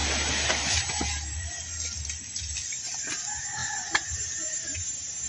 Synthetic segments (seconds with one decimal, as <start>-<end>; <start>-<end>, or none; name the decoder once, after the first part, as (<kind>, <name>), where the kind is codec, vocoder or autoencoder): none